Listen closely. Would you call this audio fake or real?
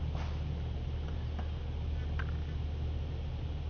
real